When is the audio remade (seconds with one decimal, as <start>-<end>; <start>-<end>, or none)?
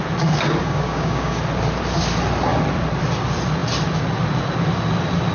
0.6-1.4